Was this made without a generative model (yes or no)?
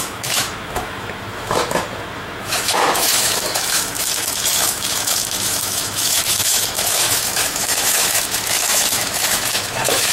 no